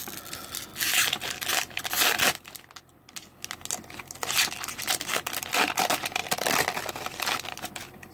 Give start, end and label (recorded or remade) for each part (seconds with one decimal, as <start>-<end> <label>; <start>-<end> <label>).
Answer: 0.0-8.1 recorded